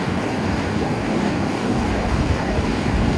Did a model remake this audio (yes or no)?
yes